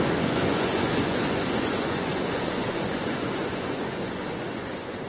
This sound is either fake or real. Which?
fake